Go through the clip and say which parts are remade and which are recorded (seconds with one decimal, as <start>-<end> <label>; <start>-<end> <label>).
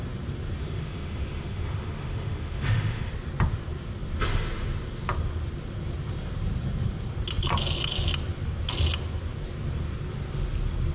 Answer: 0.0-0.6 recorded; 0.6-3.1 remade; 3.1-10.9 recorded